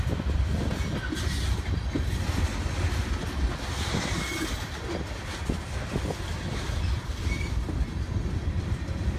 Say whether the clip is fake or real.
real